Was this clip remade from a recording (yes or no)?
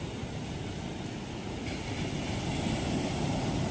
no